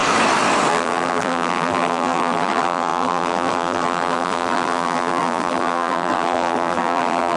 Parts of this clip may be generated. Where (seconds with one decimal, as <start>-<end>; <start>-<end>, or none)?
0.7-7.4